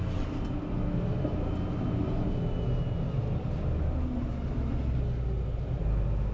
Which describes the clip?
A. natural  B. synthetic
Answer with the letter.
A